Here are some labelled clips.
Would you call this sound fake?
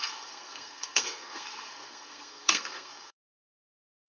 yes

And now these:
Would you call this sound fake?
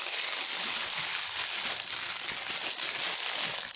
no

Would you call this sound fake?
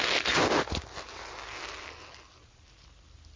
no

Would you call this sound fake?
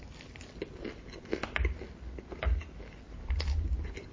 no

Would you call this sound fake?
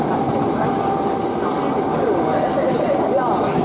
no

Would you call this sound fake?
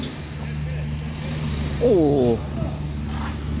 no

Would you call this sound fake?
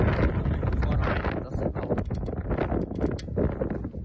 no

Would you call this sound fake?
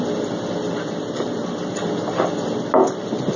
no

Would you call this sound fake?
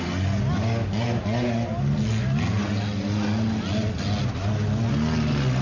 no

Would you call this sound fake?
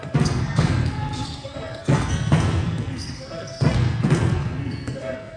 yes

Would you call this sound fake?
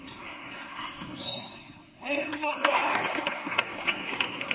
yes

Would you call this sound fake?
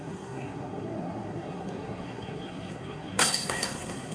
yes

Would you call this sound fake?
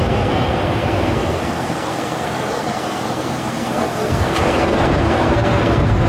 yes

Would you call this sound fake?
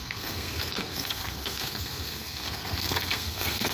yes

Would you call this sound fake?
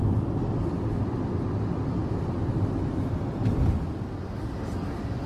no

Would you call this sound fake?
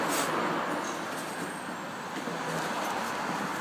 no